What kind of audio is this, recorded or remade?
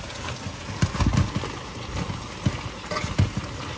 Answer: recorded